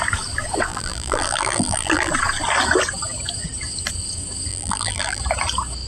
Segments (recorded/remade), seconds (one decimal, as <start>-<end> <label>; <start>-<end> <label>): 0.0-0.7 recorded; 0.7-2.1 remade; 2.1-4.5 recorded; 4.5-5.2 remade; 5.2-5.9 recorded